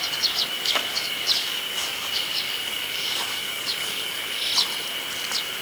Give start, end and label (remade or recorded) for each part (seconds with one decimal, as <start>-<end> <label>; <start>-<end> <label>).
0.0-4.5 remade; 4.5-5.6 recorded